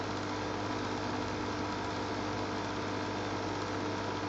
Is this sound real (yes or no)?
yes